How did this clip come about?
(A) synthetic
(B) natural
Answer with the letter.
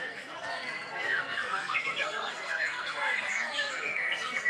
A